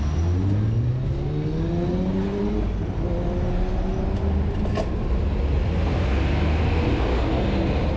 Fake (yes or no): no